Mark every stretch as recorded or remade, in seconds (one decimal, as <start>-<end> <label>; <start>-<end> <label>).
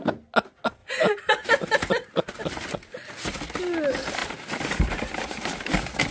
0.0-0.8 recorded; 0.8-1.3 remade; 1.3-4.2 recorded; 4.2-4.9 remade; 4.9-6.1 recorded